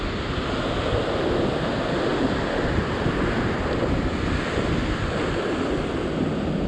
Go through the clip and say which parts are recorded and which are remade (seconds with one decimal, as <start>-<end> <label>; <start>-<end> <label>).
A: 0.0-6.7 recorded